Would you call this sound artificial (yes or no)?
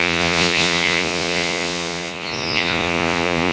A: yes